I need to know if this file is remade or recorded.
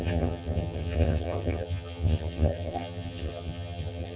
remade